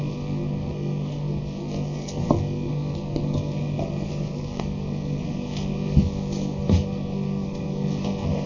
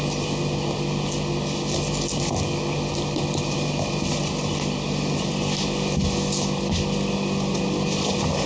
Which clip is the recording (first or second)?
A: second